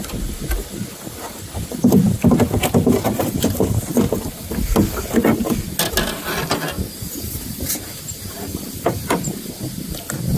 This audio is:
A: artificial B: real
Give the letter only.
B